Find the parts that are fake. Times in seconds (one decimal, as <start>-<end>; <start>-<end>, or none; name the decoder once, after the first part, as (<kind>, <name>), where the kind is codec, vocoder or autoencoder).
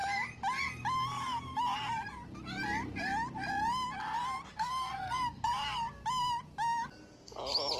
4.5-5.5 (codec, SNAC)